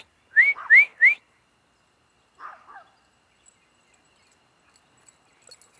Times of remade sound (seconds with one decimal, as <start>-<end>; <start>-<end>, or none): none